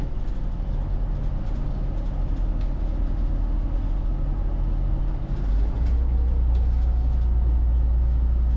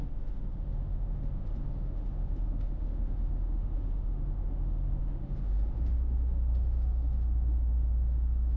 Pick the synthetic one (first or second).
second